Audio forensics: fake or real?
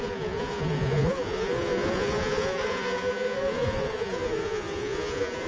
fake